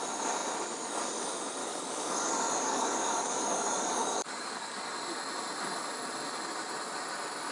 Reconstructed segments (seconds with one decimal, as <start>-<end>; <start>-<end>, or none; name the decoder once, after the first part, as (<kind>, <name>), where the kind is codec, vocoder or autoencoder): 1.6-4.8 (codec, DAC)

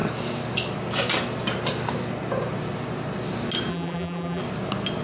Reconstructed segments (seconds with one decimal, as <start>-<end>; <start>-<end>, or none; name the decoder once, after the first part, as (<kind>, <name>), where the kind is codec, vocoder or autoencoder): 3.7-4.4 (vocoder, BigVGAN v2)

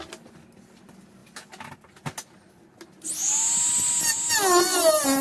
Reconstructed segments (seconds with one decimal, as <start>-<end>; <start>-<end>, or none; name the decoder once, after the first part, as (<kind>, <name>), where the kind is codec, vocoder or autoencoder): none

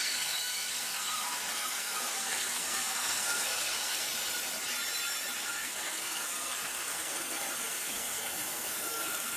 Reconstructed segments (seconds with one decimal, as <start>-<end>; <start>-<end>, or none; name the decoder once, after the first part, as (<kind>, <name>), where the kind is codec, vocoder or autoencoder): 0.0-4.1 (codec, SNAC); 5.4-9.4

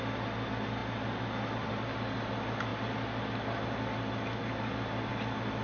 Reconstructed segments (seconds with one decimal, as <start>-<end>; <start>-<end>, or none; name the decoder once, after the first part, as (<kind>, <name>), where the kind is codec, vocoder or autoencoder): none

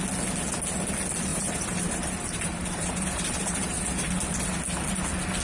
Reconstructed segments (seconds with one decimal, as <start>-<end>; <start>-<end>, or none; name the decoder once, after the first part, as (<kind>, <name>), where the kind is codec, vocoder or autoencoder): 1.3-4.5 (vocoder, BigVGAN v2)

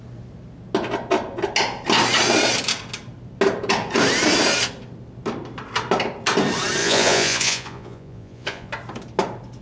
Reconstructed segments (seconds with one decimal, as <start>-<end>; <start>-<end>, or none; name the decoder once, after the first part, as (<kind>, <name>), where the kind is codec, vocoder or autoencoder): 6.8-8.7 (vocoder, Vocos)